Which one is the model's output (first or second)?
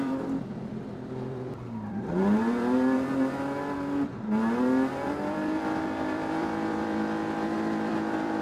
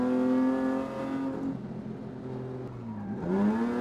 first